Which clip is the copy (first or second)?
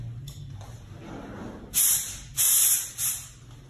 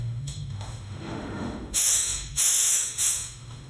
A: second